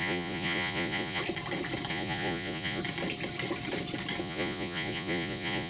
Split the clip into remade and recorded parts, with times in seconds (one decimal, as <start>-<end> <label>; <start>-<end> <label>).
0.0-1.2 remade; 1.2-1.9 recorded; 1.9-2.8 remade; 2.8-4.2 recorded; 4.2-5.7 remade